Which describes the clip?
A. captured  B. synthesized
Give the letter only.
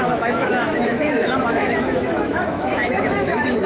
B